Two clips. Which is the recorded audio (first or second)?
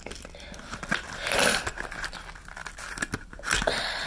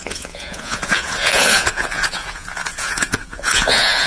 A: first